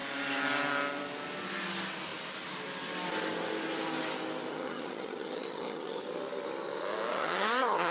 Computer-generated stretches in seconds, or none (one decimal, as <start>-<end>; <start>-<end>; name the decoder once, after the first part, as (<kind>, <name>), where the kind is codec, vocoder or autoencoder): 4.5-6.0 (vocoder, HiFi-GAN); 7.1-7.9